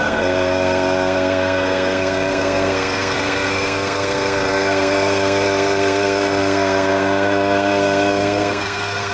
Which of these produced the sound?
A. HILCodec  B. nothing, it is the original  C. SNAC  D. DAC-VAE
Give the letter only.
C